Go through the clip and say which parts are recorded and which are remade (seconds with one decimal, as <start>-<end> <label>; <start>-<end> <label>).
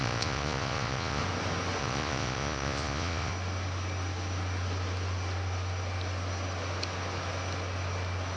0.0-1.2 remade; 1.2-1.8 recorded; 1.8-3.3 remade; 3.3-8.4 recorded